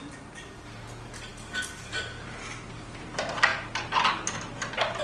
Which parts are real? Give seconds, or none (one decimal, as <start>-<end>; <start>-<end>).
0.0-5.0